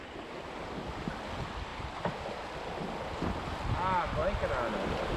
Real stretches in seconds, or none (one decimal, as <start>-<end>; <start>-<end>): 0.0-5.2